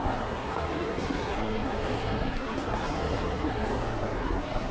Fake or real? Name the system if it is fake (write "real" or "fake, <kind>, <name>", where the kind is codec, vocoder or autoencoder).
fake, codec, SNAC